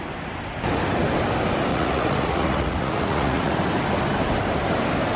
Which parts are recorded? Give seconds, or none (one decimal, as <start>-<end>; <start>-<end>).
0.0-1.7; 3.5-5.2